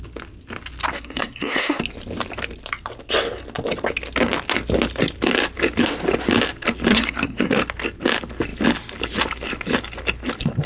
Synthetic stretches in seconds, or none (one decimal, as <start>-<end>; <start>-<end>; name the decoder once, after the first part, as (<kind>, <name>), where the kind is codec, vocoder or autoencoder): 0.9-1.8 (codec, SNAC); 6.9-7.6